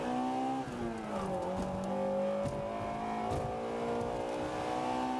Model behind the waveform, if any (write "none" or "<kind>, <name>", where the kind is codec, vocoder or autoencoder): none